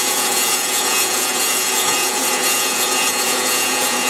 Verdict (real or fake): fake